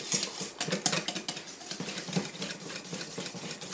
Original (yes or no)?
yes